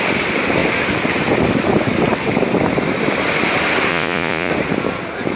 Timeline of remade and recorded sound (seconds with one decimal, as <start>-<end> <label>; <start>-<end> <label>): 0.0-3.9 recorded; 3.9-4.5 remade; 4.5-5.4 recorded